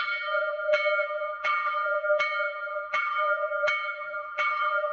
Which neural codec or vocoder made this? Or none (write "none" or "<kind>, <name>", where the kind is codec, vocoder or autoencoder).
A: vocoder, BigVGAN v2